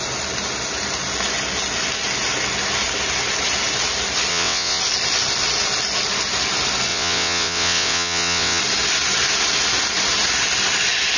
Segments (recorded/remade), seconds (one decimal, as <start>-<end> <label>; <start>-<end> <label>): 0.0-4.3 recorded; 4.3-4.8 remade; 4.8-6.9 recorded; 6.9-8.6 remade; 8.6-11.2 recorded